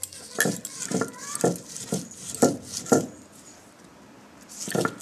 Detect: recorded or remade recorded